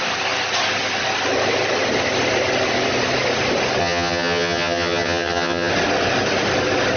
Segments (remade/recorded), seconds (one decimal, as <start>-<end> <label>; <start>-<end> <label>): 0.0-3.8 recorded; 3.8-5.7 remade; 5.7-7.0 recorded

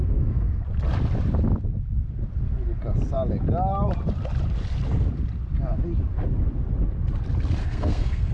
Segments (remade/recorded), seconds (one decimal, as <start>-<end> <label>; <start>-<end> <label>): 0.0-0.6 remade; 0.6-7.6 recorded; 7.6-8.3 remade

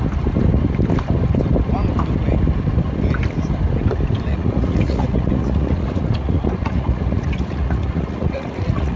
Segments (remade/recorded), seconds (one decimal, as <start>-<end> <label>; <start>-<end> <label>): 0.0-4.3 recorded; 4.3-9.0 remade